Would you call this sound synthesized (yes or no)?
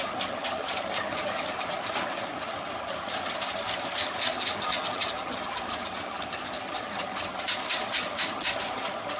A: yes